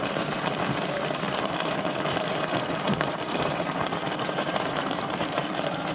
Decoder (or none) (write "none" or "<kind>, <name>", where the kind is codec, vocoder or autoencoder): vocoder, BigVGAN v2